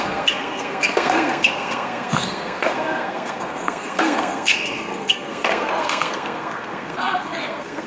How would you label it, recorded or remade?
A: remade